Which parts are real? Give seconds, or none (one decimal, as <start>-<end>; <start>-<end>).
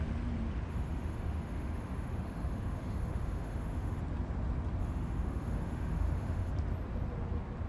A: 0.0-0.7; 4.0-4.8; 6.5-7.7